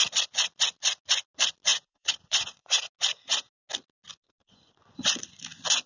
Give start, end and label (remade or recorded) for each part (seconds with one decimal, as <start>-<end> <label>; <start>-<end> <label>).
0.0-1.7 recorded; 1.7-2.8 remade; 2.8-4.1 recorded; 4.1-5.4 remade; 5.4-5.9 recorded